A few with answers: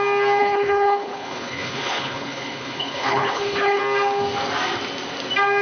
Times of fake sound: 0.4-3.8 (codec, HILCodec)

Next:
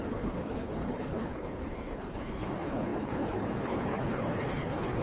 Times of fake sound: 0.0-5.0 (codec, HILCodec)

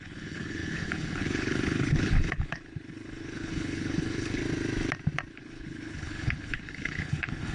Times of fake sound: 0.0-4.4 (codec, HILCodec); 5.3-7.5

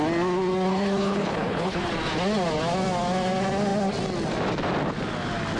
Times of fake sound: 0.7-1.9 (codec, HILCodec)